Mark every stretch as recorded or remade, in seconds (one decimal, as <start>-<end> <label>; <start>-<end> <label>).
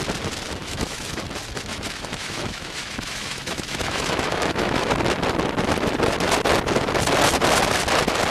0.0-0.6 recorded; 0.6-1.2 remade; 1.2-1.7 recorded; 1.7-4.9 remade; 4.9-8.3 recorded